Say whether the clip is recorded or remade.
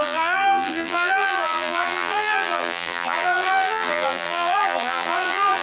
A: remade